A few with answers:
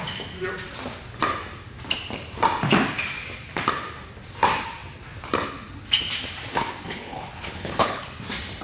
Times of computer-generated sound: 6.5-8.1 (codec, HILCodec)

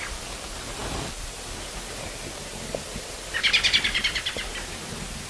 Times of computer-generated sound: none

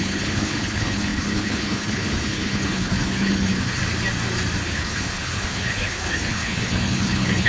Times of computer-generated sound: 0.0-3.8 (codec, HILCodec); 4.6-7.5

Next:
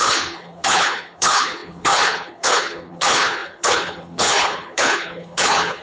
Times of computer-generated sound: 0.0-5.8 (codec, HILCodec)